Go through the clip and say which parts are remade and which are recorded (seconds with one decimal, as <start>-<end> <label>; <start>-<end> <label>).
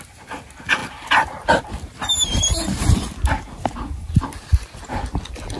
0.0-5.6 recorded